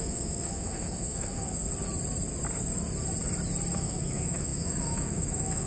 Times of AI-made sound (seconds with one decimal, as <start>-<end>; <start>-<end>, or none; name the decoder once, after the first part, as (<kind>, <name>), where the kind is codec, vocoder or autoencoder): 0.0-1.6 (autoencoder, DAC-VAE); 3.7-5.7